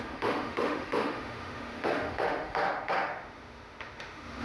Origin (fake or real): fake